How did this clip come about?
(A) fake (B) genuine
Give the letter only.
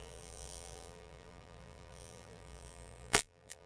A